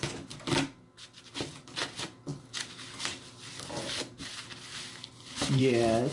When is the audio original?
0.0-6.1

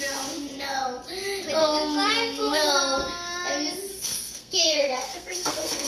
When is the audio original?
0.0-1.6; 2.7-3.9

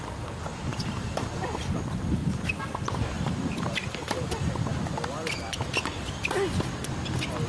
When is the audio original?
0.0-0.5; 1.8-2.2; 4.3-7.5

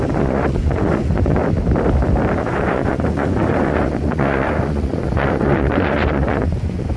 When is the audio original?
1.4-2.4

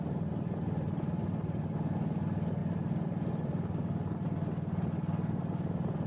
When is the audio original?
0.0-6.1